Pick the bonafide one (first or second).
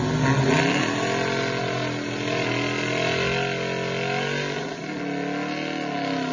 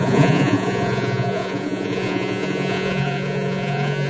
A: first